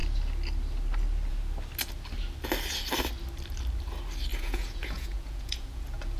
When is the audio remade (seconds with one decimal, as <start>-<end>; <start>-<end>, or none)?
4.3-6.2